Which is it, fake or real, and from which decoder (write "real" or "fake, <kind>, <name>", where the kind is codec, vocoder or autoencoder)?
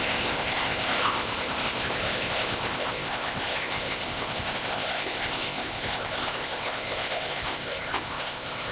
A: fake, codec, ZipCodec